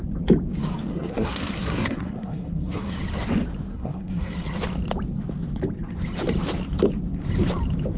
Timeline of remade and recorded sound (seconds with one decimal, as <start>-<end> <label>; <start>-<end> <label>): 0.0-0.9 recorded; 0.9-3.0 remade; 3.0-3.7 recorded; 3.7-4.3 remade; 4.3-8.0 recorded